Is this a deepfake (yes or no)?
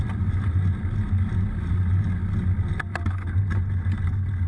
no